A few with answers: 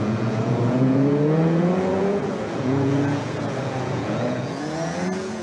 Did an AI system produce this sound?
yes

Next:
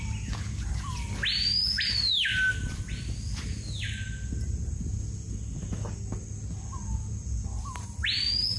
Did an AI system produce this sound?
no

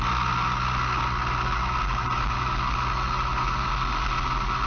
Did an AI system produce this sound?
no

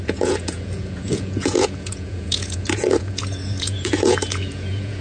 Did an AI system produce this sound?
yes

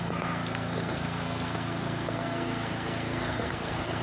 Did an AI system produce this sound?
yes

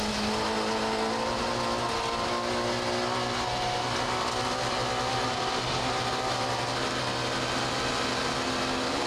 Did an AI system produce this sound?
no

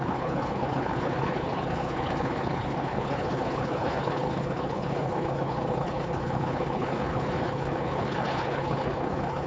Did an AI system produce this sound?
yes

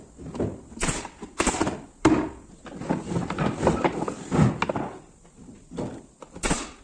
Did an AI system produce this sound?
no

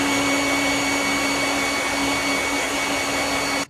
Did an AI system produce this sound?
no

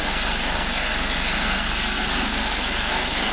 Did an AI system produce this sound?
yes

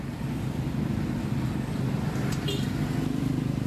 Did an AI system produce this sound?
no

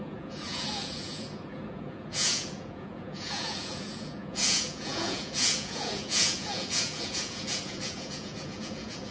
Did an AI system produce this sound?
yes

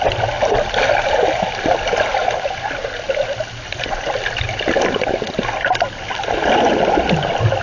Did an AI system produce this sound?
no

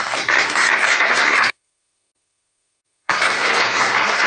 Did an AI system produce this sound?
yes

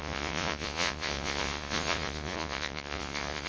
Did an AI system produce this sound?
yes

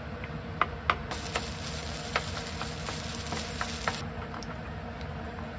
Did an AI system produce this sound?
no